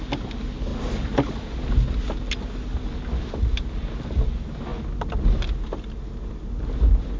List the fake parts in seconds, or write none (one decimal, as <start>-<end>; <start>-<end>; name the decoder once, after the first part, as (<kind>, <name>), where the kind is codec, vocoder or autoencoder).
none